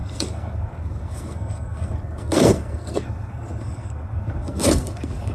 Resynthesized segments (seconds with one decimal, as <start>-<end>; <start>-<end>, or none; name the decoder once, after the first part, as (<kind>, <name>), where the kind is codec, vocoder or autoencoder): 0.0-5.3 (codec, SNAC)